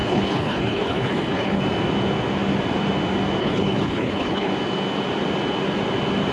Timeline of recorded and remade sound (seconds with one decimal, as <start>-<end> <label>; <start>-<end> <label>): 0.0-1.6 remade; 1.6-3.4 recorded; 3.4-4.5 remade; 4.5-6.3 recorded